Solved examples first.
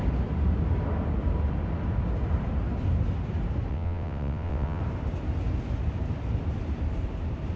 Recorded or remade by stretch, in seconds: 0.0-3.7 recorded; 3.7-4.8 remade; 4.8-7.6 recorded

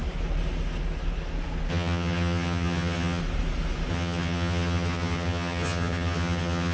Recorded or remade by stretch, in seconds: 0.0-1.7 recorded; 1.7-3.2 remade; 3.2-3.9 recorded; 3.9-6.7 remade

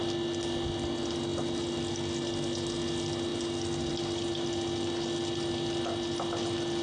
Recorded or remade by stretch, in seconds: 0.0-1.3 recorded; 1.3-2.2 remade; 2.2-3.3 recorded; 3.3-3.9 remade; 3.9-4.3 recorded; 4.3-5.5 remade; 5.5-6.8 recorded